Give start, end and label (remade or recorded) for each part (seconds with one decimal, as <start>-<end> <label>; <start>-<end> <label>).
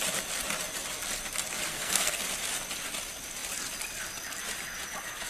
0.0-1.7 recorded; 1.7-2.2 remade; 2.2-5.3 recorded